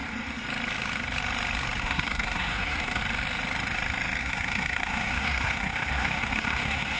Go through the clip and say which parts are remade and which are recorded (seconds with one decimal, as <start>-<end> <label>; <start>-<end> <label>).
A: 0.0-1.8 recorded; 1.8-3.0 remade; 3.0-4.2 recorded; 4.2-7.0 remade